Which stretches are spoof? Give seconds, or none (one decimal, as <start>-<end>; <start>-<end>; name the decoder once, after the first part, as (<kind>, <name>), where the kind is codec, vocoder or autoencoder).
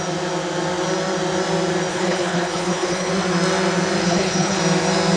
1.9-3.1 (codec, HILCodec); 4.0-4.6